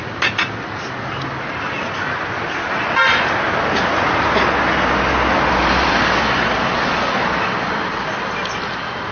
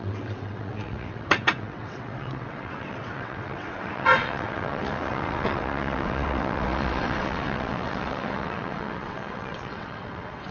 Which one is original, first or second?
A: first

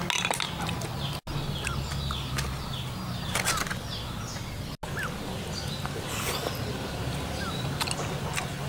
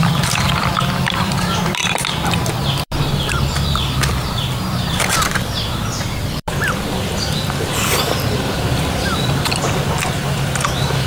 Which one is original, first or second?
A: first